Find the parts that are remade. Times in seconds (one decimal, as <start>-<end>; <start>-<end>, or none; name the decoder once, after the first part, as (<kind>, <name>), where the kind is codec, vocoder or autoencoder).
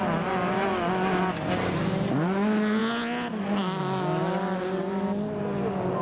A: none